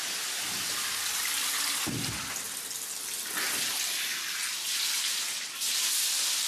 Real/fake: real